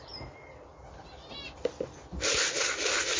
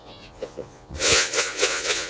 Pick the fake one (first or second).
second